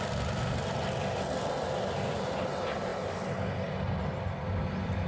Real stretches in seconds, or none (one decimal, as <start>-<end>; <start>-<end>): 0.0-5.1

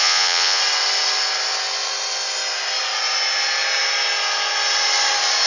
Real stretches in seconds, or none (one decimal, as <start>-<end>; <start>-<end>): 0.6-5.5

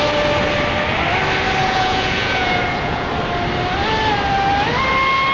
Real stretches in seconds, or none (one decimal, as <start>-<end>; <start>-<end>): 0.0-1.6; 3.1-5.3

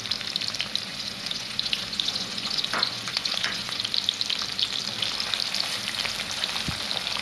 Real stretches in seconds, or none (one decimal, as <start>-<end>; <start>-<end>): 0.0-0.9; 3.8-7.2

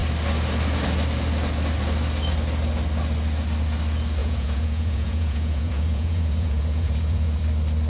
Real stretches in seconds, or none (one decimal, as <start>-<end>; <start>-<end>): 0.0-4.2; 7.4-7.9

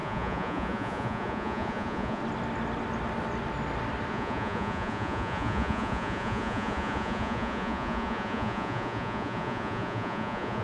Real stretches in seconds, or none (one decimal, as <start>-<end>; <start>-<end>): 2.2-4.1